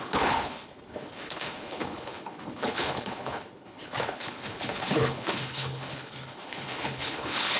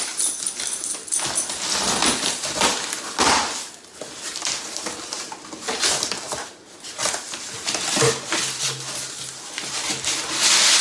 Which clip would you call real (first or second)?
second